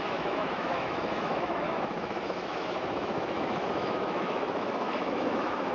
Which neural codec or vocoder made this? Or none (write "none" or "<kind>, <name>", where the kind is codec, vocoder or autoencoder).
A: autoencoder, DAC-VAE